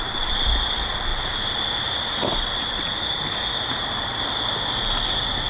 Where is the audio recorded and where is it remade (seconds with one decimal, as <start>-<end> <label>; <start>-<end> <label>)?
0.0-5.5 recorded